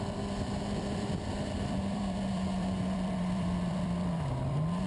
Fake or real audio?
fake